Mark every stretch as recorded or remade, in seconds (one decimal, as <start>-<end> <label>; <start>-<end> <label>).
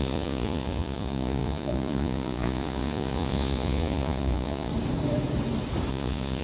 0.0-4.7 remade; 4.7-5.9 recorded; 5.9-6.4 remade